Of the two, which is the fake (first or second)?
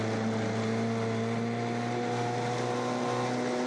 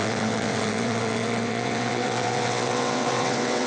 second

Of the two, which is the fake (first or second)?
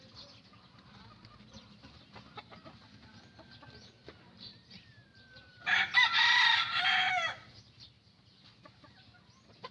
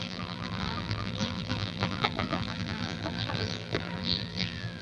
second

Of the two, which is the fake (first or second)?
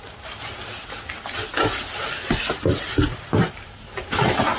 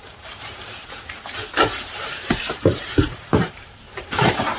second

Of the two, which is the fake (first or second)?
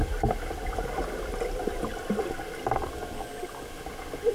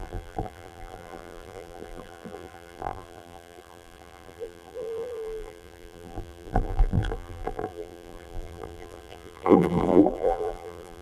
second